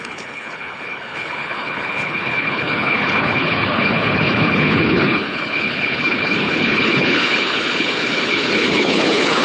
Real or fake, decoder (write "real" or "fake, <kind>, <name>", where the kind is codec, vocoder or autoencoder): fake, codec, HILCodec